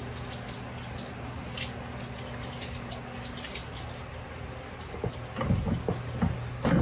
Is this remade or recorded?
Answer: recorded